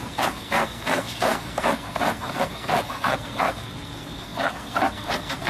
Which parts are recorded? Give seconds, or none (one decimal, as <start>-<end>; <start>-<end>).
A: none